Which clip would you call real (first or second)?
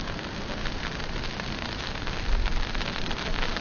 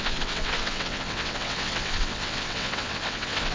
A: first